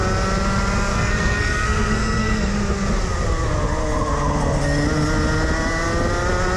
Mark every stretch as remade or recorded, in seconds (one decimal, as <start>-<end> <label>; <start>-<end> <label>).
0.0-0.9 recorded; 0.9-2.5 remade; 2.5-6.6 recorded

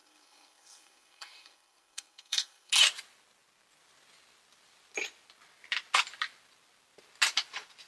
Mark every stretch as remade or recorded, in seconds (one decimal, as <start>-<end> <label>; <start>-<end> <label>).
0.0-2.7 remade; 2.7-7.9 recorded

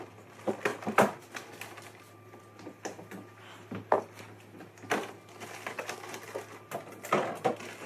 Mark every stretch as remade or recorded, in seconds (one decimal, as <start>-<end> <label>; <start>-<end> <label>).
0.0-7.9 recorded

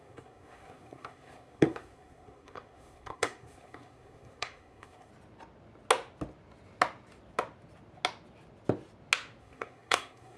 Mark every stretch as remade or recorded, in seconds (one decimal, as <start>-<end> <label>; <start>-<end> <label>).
0.0-5.1 remade; 5.1-9.4 recorded; 9.4-10.4 remade

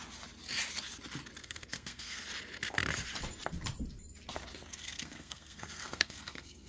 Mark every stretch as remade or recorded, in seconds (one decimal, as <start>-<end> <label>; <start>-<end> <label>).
0.0-1.4 recorded; 1.4-2.2 remade; 2.2-4.7 recorded; 4.7-6.7 remade

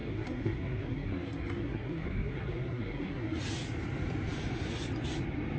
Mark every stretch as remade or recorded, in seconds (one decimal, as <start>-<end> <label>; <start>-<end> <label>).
0.0-3.4 remade; 3.4-5.6 recorded

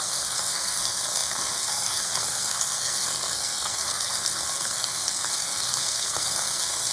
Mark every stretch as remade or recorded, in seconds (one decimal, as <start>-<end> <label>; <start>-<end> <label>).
0.0-6.9 remade